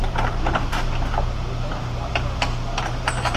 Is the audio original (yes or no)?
no